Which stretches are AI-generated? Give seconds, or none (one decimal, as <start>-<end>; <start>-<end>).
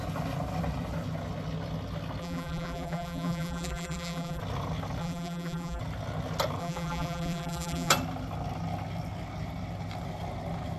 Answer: 2.2-4.4; 5.0-5.8; 6.6-7.9